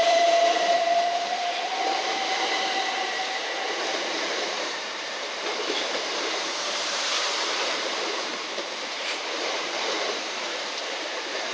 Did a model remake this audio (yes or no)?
yes